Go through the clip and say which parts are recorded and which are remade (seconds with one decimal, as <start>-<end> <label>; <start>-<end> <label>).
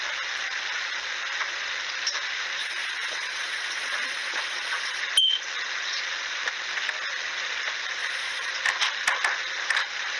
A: 0.0-2.6 recorded; 2.6-5.0 remade; 5.0-8.0 recorded; 8.0-8.5 remade; 8.5-10.2 recorded